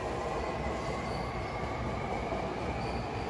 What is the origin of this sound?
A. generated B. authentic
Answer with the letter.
B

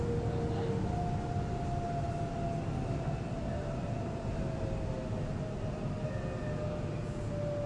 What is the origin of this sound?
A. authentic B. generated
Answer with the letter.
A